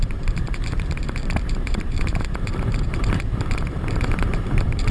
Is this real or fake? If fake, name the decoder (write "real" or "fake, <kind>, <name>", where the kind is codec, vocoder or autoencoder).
fake, vocoder, BigVGAN v2